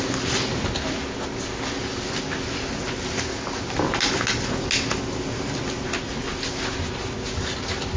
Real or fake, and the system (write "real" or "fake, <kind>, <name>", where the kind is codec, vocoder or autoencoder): real